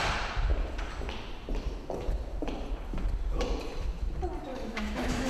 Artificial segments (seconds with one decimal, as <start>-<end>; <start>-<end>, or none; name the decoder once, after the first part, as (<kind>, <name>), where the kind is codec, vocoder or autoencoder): 4.5-5.3 (autoencoder, DAC-VAE)